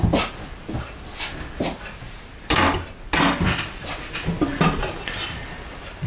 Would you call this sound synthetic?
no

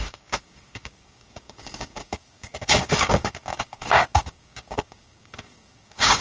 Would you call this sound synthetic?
yes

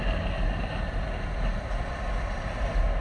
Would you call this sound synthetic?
no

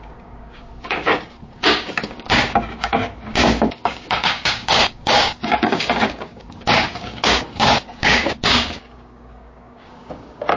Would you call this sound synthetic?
yes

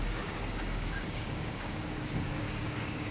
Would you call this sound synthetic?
yes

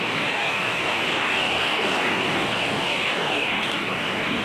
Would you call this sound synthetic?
yes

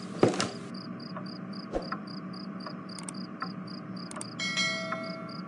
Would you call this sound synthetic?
no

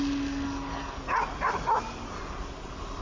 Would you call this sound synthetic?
no